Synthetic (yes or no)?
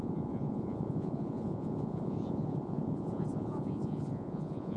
yes